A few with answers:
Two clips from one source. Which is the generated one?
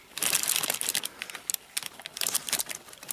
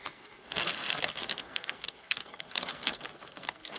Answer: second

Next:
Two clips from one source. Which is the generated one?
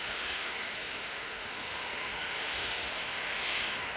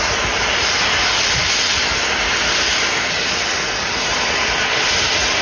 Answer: first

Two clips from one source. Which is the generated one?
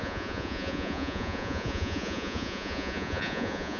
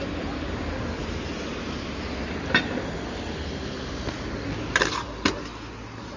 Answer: first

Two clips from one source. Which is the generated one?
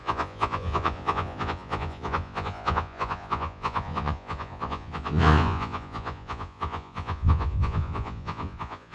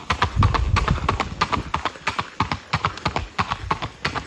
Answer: first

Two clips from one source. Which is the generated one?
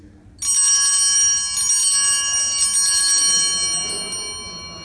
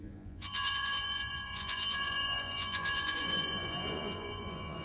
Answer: second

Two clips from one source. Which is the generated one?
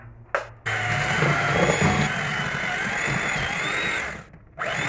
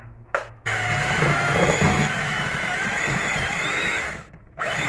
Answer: second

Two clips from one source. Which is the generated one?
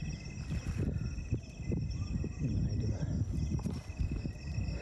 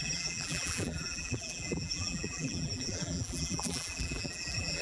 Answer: second